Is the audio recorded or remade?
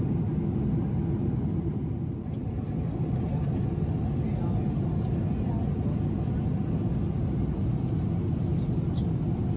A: recorded